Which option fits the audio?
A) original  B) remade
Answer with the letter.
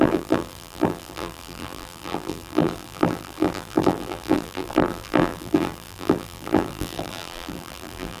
B